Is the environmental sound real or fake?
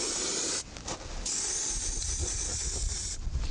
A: real